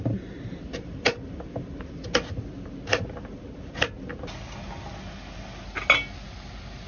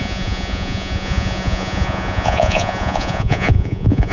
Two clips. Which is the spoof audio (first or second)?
second